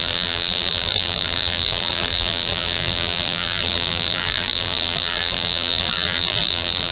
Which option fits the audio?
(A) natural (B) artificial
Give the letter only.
B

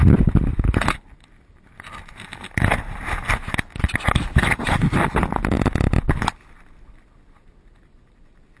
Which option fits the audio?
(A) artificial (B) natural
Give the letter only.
B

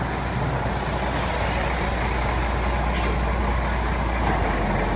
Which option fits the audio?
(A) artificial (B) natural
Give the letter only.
B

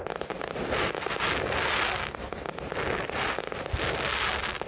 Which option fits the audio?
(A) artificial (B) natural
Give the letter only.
B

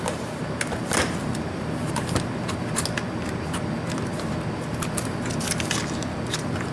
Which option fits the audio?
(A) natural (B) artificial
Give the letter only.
A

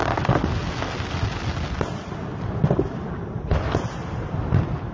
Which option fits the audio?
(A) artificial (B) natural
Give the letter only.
B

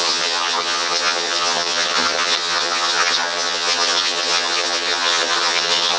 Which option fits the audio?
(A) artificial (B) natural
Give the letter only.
A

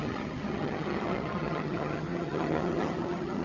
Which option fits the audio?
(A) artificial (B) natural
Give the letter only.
A